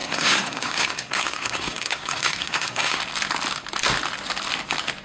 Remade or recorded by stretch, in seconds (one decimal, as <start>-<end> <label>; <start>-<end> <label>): 0.0-3.0 remade; 3.0-5.0 recorded